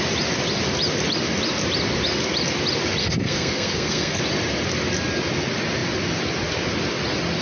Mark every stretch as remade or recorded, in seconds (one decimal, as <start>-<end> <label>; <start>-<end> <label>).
0.0-3.0 recorded; 3.0-4.2 remade; 4.2-7.4 recorded